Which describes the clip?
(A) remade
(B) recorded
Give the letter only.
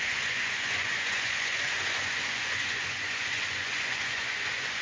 A